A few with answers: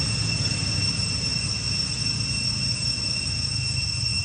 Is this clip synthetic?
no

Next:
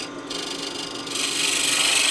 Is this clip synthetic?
no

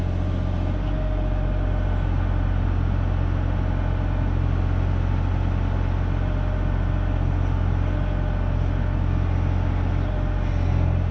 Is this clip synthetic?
no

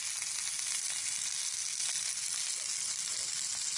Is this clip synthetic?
no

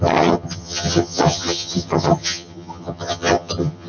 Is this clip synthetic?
yes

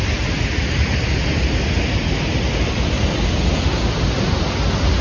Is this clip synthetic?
no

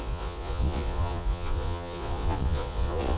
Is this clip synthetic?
yes